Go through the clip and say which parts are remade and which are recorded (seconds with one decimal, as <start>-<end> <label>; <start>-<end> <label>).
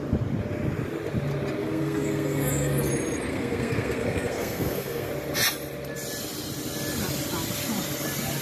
0.0-1.6 recorded; 1.6-2.9 remade; 2.9-3.3 recorded; 3.3-5.1 remade; 5.1-8.4 recorded